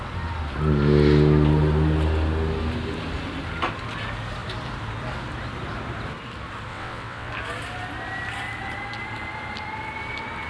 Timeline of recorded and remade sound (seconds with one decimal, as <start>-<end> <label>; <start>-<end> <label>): 0.0-6.7 recorded; 6.7-7.3 remade; 7.3-10.5 recorded